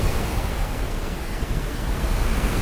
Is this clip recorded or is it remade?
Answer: remade